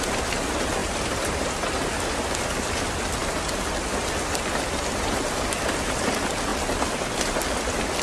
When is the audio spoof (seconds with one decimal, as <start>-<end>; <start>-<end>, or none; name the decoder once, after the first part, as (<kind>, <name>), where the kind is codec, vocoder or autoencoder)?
0.8-1.5 (vocoder, BigVGAN v2)